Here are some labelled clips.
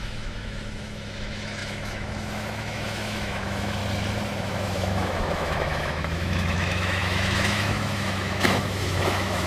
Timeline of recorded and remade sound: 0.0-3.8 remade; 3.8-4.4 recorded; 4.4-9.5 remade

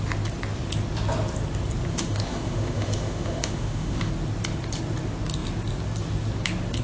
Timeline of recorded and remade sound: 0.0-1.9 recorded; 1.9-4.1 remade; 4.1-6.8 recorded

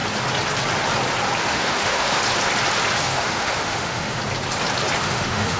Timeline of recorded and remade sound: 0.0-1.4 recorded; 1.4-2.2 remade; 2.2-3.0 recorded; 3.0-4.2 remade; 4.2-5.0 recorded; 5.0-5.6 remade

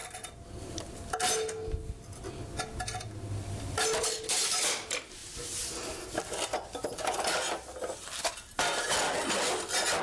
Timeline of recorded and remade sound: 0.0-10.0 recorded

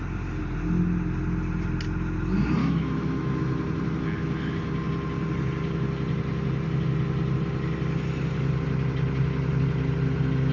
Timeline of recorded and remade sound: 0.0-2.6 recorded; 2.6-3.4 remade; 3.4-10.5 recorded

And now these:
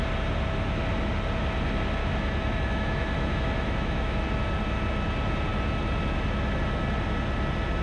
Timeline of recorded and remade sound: 0.0-2.0 recorded; 2.0-4.2 remade; 4.2-7.8 recorded